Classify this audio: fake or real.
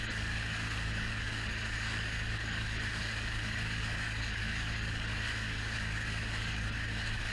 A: fake